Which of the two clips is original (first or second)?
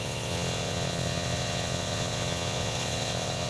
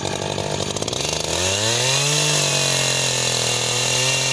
second